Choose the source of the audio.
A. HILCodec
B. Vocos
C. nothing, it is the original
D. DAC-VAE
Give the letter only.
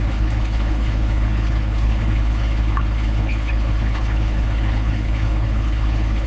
A